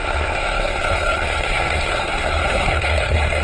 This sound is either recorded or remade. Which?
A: remade